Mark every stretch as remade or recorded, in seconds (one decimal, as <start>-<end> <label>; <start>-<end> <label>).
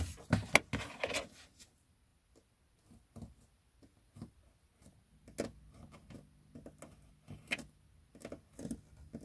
0.0-9.2 recorded